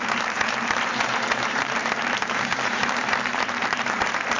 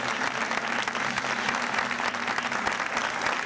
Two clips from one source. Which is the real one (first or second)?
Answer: second